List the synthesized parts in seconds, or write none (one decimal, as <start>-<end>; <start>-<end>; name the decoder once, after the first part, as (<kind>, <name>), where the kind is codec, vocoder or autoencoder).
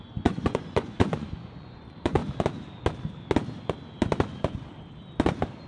0.0-2.2 (vocoder, Vocos)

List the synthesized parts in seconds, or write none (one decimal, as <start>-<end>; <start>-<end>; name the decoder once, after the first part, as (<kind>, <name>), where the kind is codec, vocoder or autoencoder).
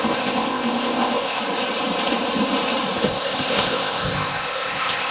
0.0-1.4 (codec, ZipCodec); 3.0-5.1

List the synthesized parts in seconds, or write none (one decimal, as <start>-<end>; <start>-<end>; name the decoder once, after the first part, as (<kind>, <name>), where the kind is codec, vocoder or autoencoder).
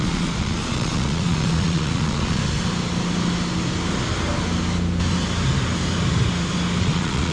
0.0-2.4 (vocoder, Vocos); 6.8-7.3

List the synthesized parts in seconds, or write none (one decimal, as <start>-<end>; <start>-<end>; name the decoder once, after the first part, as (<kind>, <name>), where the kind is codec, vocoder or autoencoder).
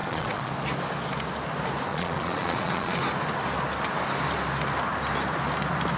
0.0-0.5 (vocoder, Vocos); 1.9-3.0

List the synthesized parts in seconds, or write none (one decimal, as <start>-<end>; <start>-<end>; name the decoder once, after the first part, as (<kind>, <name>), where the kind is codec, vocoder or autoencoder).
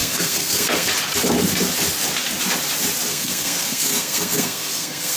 0.0-0.9 (codec, SNAC); 3.1-5.2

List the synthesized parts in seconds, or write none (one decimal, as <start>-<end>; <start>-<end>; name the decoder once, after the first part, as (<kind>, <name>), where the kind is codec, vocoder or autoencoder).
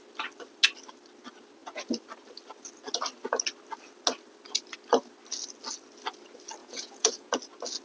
6.6-7.3 (vocoder, Vocos)